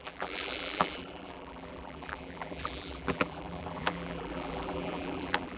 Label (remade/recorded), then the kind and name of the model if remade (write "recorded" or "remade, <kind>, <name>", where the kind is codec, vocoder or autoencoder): remade, vocoder, BigVGAN v2